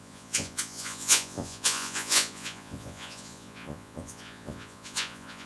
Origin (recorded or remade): remade